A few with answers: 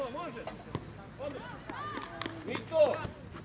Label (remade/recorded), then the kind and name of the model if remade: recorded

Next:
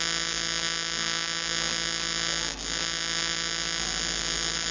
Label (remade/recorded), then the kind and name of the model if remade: recorded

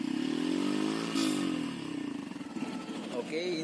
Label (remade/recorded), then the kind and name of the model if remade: recorded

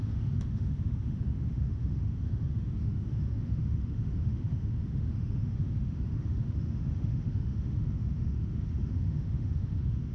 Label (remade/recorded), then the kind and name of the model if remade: remade, autoencoder, DAC-VAE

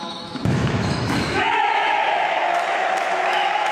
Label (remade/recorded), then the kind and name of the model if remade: remade, autoencoder, DAC-VAE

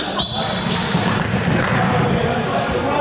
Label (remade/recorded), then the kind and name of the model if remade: recorded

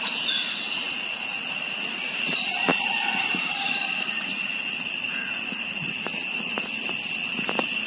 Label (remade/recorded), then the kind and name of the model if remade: remade, vocoder, Vocos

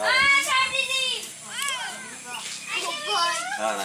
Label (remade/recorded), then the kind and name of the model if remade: recorded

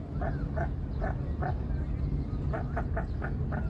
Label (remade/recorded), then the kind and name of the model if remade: recorded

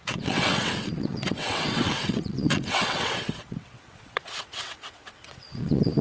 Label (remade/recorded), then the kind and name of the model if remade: remade, vocoder, WaveNeXt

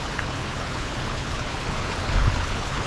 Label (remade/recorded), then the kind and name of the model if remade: remade, codec, HILCodec